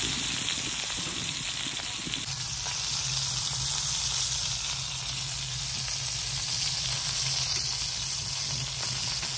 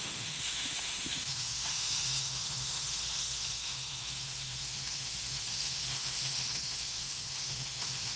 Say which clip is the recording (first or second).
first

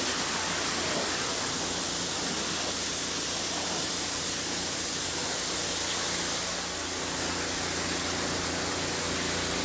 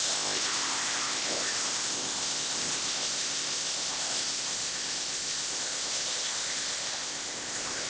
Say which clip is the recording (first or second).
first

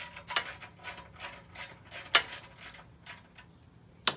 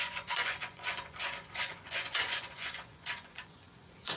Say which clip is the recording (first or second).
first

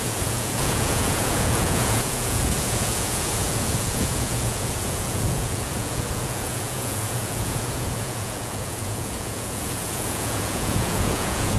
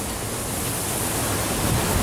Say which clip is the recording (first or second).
second